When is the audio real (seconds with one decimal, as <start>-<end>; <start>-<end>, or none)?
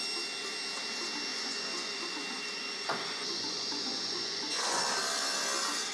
0.0-1.3; 4.8-5.9